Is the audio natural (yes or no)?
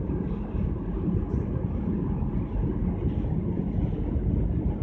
yes